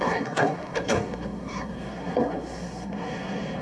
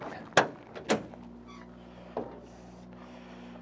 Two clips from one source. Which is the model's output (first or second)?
first